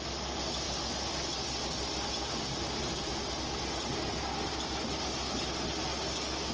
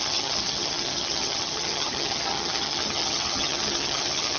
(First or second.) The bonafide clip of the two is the first